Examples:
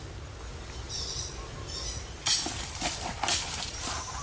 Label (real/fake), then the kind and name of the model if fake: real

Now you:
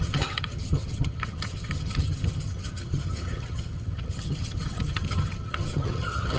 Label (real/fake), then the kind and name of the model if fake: fake, vocoder, HiFi-GAN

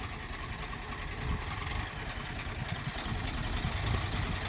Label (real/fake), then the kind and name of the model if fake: real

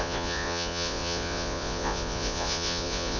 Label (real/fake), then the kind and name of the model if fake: fake, vocoder, Vocos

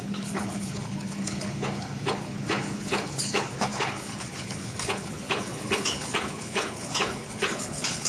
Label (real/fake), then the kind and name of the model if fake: fake, codec, HILCodec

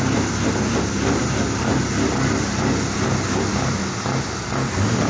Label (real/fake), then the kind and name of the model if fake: real